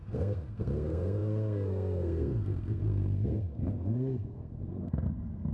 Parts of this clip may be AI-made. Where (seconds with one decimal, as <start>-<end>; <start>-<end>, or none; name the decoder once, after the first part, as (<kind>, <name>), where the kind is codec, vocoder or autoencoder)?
0.0-5.5 (codec, SNAC)